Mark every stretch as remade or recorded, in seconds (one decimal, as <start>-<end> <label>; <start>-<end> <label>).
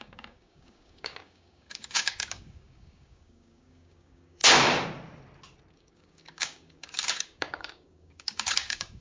0.0-4.4 remade; 4.4-5.7 recorded; 5.7-9.0 remade